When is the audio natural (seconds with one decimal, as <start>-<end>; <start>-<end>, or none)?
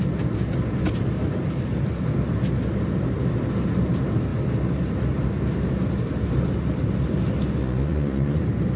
0.0-7.6; 8.4-8.8